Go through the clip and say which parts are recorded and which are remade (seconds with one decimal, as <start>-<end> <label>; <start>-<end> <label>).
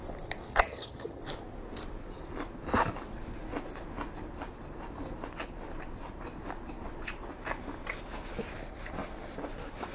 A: 0.0-0.5 recorded; 0.5-1.2 remade; 1.2-9.9 recorded